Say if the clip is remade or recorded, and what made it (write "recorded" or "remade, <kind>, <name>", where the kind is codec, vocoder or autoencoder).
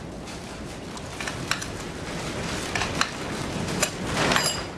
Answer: remade, vocoder, BigVGAN v2